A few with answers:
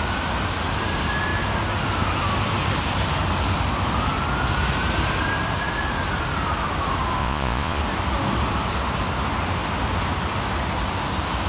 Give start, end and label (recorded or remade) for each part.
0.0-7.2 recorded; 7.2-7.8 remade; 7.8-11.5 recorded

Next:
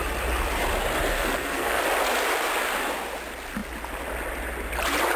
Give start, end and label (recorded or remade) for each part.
0.0-1.1 recorded; 1.1-1.8 remade; 1.8-5.2 recorded

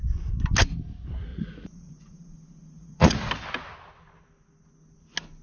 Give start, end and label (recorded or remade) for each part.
0.0-1.3 recorded; 1.3-3.3 remade; 3.3-5.4 recorded

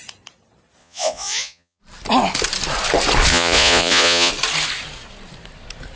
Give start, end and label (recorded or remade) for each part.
0.0-0.8 recorded; 0.8-1.8 remade; 1.8-3.3 recorded; 3.3-4.3 remade; 4.3-6.0 recorded

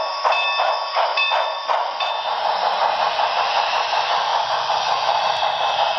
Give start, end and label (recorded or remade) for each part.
0.0-1.1 recorded; 1.1-2.1 remade; 2.1-4.3 recorded; 4.3-5.2 remade; 5.2-6.0 recorded

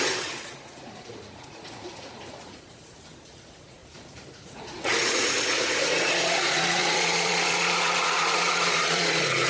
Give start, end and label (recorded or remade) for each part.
0.0-9.5 remade

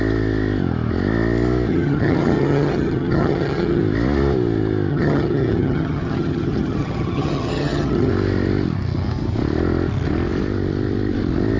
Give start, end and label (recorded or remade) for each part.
0.0-1.7 recorded; 1.7-3.8 remade; 3.8-4.9 recorded; 4.9-8.1 remade; 8.1-11.6 recorded

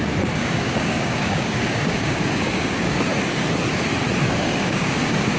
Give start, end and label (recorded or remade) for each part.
0.0-3.1 remade; 3.1-4.3 recorded; 4.3-5.4 remade